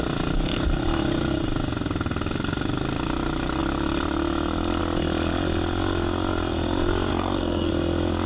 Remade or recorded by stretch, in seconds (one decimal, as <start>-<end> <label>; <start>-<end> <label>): 0.0-7.1 recorded; 7.1-7.7 remade; 7.7-8.3 recorded